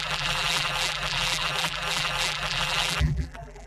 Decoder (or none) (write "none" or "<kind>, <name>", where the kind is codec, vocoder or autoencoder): vocoder, BigVGAN v2